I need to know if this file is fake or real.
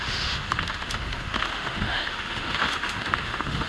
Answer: fake